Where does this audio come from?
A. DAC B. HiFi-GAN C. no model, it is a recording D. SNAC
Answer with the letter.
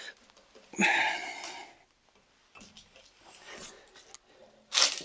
C